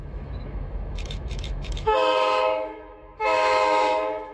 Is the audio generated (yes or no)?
yes